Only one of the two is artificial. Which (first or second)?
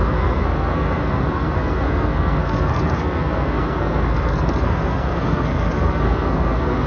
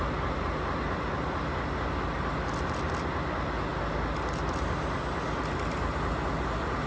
first